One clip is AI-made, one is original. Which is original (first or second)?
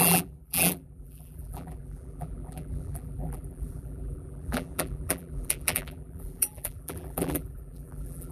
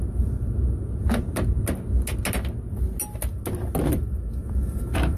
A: second